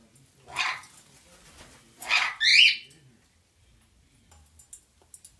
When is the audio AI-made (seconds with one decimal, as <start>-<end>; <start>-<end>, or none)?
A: none